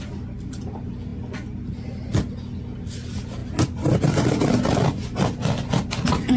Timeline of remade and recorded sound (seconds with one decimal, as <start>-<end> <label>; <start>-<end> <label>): 0.0-6.4 recorded